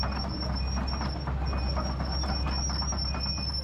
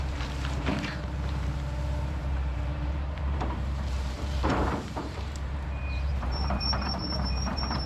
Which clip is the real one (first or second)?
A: first